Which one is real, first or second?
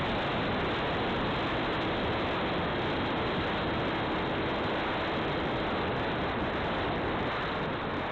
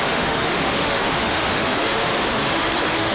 first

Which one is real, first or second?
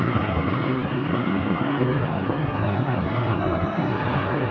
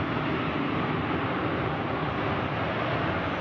second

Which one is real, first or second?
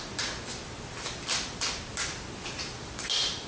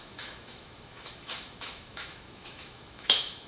first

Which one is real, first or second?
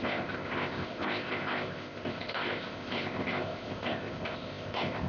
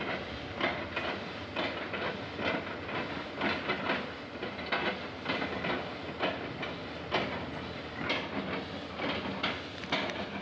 second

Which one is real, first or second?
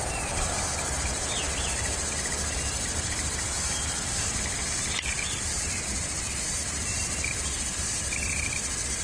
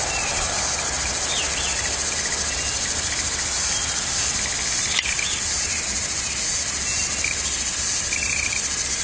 second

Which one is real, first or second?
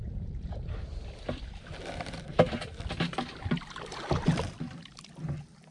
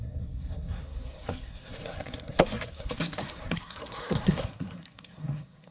first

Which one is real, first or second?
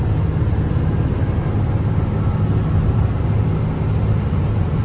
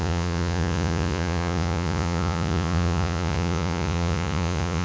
first